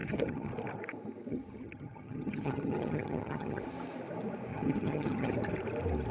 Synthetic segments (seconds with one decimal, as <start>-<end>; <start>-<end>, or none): 0.0-0.5; 1.3-3.6; 4.5-5.3